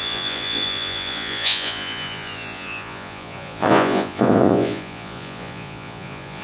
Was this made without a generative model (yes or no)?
no